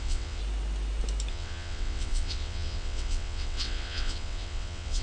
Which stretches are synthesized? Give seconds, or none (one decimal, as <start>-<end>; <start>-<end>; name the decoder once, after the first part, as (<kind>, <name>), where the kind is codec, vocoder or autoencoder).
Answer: 0.0-0.4 (vocoder, WaveNeXt); 1.3-5.0